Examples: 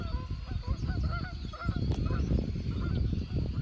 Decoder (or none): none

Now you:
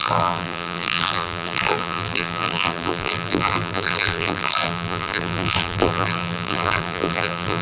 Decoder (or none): vocoder, BigVGAN v2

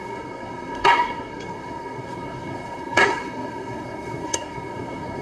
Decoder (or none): codec, SNAC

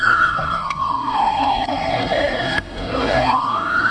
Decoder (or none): codec, SNAC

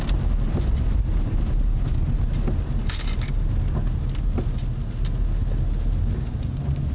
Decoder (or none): none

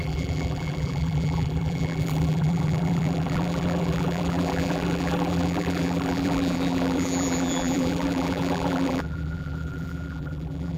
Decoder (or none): vocoder, BigVGAN v2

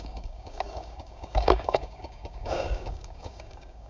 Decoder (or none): codec, DAC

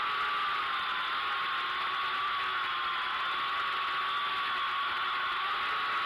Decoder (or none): none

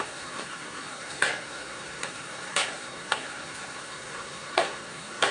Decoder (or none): codec, SNAC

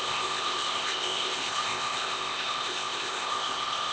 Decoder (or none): codec, ZipCodec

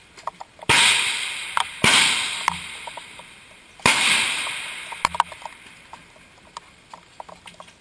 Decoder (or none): none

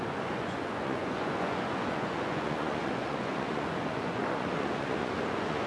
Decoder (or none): vocoder, Vocos